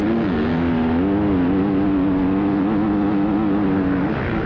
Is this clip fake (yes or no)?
no